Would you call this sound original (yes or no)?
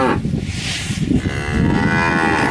yes